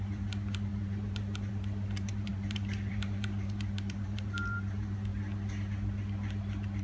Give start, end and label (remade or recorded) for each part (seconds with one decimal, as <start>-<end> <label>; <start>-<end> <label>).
0.0-5.1 remade; 5.1-6.8 recorded